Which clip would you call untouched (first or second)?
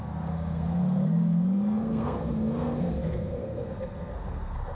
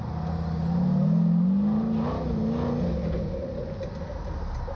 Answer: second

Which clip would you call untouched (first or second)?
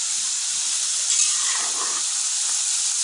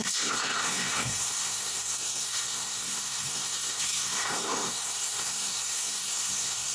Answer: first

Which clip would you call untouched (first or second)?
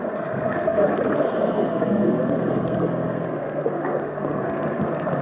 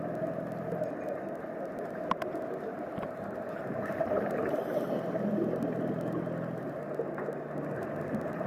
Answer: second